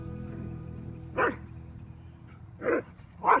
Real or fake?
fake